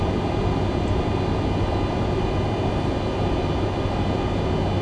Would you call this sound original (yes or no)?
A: yes